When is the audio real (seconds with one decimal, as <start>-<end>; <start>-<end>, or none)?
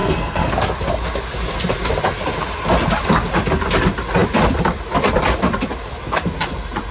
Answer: 0.5-6.9